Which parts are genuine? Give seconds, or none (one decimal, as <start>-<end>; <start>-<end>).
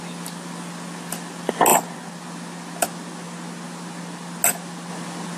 0.0-5.4